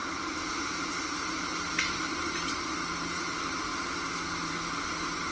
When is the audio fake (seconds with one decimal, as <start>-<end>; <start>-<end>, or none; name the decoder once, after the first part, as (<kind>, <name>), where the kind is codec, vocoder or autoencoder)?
none